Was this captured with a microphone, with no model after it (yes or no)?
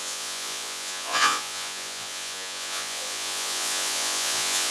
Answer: no